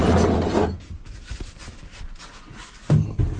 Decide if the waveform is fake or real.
real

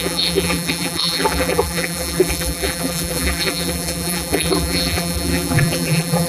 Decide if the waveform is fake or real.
fake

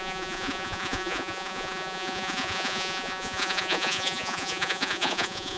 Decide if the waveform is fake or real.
fake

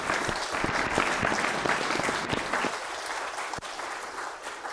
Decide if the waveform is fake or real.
real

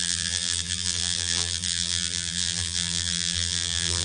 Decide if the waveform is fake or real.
fake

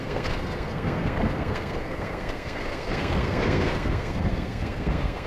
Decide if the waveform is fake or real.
fake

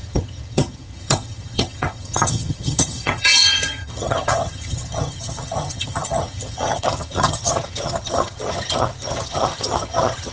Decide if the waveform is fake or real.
fake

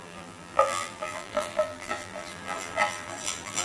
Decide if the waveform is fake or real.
fake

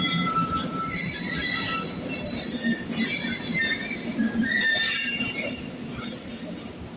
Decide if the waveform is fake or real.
fake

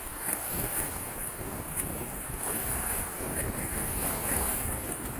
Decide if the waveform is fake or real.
fake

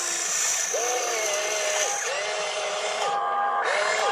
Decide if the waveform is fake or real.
real